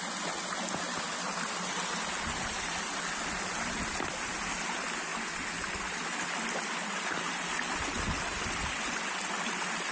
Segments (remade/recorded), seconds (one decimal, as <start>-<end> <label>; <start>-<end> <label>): 0.0-9.9 recorded

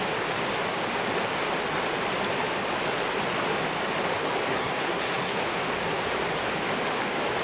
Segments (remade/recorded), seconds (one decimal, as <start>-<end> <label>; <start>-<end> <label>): 0.0-4.5 recorded; 4.5-5.4 remade; 5.4-7.4 recorded

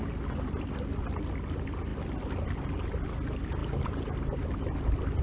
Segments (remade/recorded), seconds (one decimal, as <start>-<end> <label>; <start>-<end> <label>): 0.0-5.2 recorded

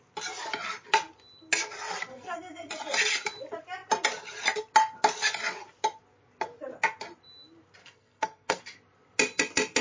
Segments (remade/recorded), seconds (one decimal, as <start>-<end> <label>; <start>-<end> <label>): 0.0-2.1 recorded; 2.1-2.7 remade; 2.7-7.8 recorded; 7.8-8.6 remade; 8.6-9.8 recorded

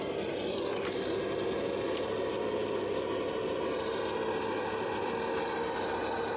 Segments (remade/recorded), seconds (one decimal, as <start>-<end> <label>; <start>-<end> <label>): 0.0-6.4 recorded

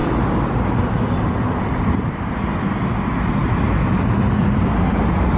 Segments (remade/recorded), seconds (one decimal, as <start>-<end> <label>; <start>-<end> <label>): 0.0-5.4 recorded